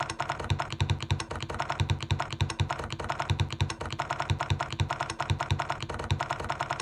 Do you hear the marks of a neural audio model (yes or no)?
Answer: no